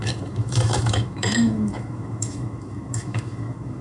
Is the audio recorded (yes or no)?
no